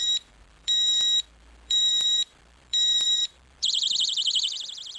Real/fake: fake